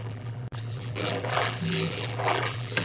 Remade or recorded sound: remade